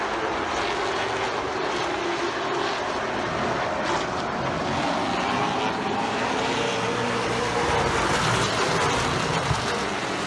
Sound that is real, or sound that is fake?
real